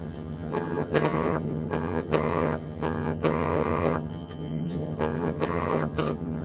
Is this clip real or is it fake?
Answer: fake